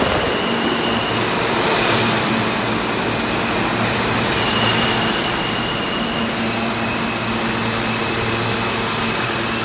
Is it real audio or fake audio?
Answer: real